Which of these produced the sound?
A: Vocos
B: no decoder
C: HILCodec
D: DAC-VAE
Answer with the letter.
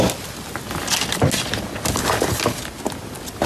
B